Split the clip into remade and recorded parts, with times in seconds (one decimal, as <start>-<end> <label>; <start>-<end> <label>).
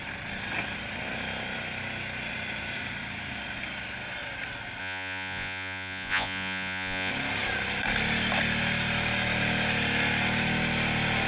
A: 0.0-4.8 recorded; 4.8-7.1 remade; 7.1-11.3 recorded